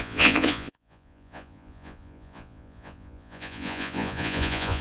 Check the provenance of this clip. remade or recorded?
remade